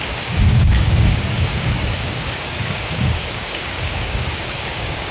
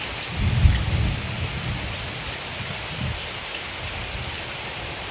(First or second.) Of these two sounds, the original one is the second